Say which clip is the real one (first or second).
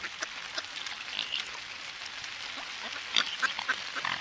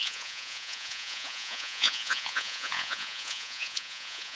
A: first